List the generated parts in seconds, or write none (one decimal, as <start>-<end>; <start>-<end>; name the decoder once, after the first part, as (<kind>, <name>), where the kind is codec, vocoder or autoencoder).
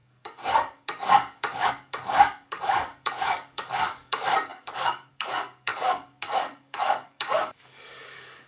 0.0-8.5 (codec, DAC)